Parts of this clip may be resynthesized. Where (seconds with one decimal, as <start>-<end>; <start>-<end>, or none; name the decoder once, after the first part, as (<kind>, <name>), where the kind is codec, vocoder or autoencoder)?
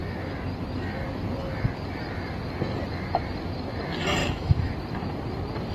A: 4.2-4.7 (autoencoder, DAC-VAE)